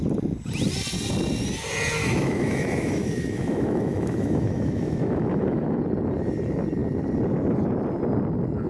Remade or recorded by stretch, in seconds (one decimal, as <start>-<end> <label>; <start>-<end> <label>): 0.0-2.0 recorded; 2.0-5.8 remade; 5.8-8.7 recorded